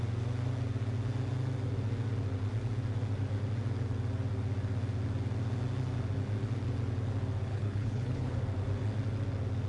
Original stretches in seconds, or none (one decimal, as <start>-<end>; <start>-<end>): 0.0-7.5; 8.4-9.7